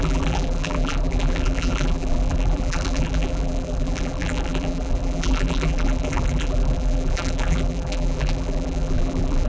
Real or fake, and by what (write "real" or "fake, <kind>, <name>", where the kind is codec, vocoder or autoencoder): fake, vocoder, BigVGAN v2